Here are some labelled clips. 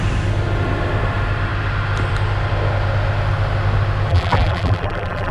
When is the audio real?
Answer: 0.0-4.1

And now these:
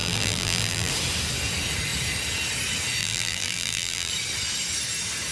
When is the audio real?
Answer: 0.9-3.0; 4.1-5.3

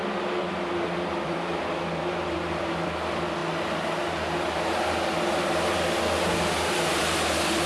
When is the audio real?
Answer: 3.4-6.9